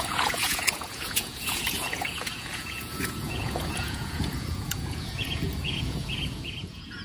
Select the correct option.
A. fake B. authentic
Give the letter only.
A